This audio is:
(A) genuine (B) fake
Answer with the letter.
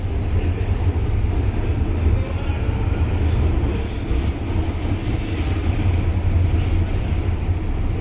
A